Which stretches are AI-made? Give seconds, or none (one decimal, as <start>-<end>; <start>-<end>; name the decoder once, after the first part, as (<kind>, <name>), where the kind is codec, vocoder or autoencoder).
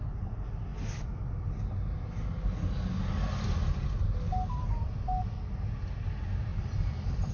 0.7-1.5 (vocoder, BigVGAN v2); 4.6-5.4; 6.5-7.3